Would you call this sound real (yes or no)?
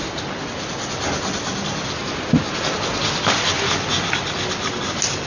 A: yes